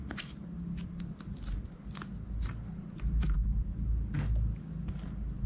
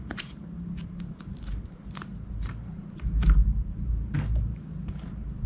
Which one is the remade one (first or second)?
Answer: second